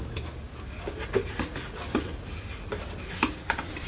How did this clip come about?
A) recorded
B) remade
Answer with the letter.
A